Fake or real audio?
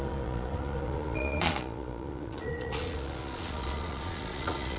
fake